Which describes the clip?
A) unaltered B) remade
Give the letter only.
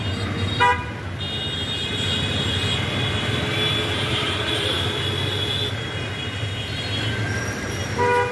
A